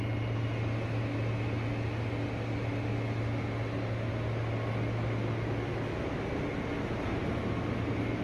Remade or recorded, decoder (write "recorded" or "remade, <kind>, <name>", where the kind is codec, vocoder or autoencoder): recorded